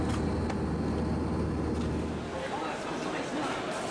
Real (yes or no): yes